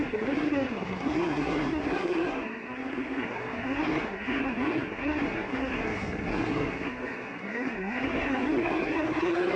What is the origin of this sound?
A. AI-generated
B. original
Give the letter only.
A